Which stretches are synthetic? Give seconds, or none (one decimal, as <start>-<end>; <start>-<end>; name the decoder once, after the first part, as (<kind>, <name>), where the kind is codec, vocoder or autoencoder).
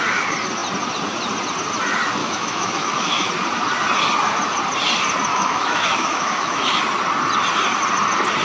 2.2-3.3 (autoencoder, DAC-VAE); 5.3-6.8